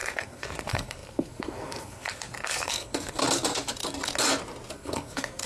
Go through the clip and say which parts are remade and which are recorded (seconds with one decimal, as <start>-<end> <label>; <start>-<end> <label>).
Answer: 0.0-3.2 remade; 3.2-4.7 recorded; 4.7-5.5 remade